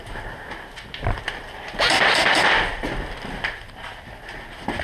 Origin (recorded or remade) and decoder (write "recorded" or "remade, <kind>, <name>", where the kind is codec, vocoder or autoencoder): recorded